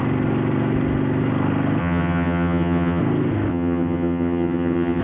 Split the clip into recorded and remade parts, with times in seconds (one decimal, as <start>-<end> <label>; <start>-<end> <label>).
0.0-1.8 recorded; 1.8-3.0 remade; 3.0-3.5 recorded; 3.5-5.0 remade